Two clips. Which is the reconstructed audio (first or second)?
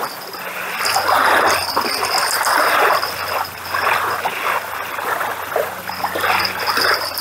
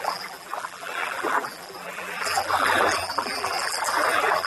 second